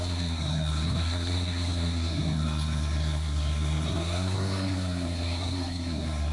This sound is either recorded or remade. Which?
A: remade